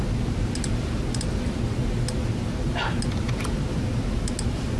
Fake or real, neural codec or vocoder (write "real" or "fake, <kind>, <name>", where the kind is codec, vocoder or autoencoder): real